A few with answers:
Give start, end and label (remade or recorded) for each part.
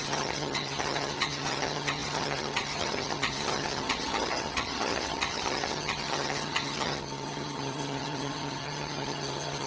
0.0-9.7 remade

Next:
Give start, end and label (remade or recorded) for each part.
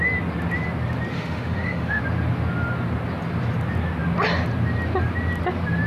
0.0-1.1 recorded; 1.1-2.0 remade; 2.0-5.9 recorded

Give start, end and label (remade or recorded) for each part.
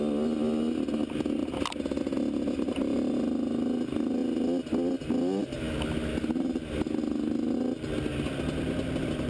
0.0-1.4 recorded; 1.4-2.0 remade; 2.0-9.3 recorded